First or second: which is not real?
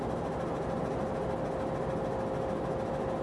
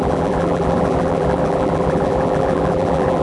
second